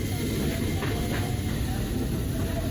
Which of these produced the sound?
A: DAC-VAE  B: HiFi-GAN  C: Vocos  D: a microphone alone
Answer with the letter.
D